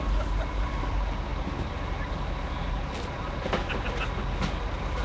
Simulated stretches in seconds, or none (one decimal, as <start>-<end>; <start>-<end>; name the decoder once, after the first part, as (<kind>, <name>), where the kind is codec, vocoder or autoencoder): none